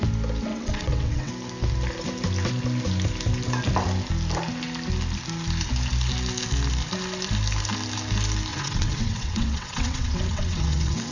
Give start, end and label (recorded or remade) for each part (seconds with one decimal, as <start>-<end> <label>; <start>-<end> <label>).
0.0-0.5 recorded; 0.5-1.3 remade; 1.3-8.5 recorded; 8.5-11.1 remade